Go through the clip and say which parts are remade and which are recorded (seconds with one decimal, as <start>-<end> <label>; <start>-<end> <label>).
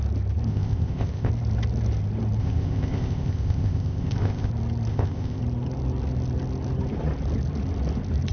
0.0-0.5 recorded; 0.5-1.3 remade; 1.3-2.4 recorded; 2.4-4.5 remade; 4.5-4.9 recorded; 4.9-5.4 remade; 5.4-8.3 recorded